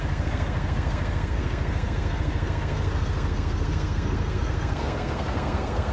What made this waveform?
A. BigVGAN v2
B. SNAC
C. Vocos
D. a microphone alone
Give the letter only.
B